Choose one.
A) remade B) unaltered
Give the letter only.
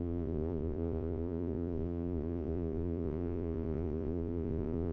A